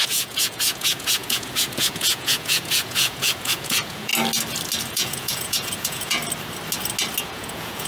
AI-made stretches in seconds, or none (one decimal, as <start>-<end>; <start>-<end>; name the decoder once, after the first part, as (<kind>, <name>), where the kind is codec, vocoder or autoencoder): 0.0-4.1 (vocoder, Vocos); 4.9-6.2; 7.2-7.9